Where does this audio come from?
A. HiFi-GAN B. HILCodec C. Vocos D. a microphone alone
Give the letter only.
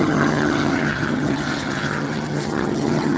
A